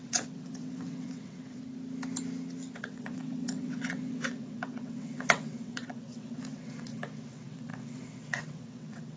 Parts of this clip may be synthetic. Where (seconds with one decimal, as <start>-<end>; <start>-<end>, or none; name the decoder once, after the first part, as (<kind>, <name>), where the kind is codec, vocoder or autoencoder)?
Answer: 0.0-1.6 (vocoder, WaveNeXt); 2.8-9.2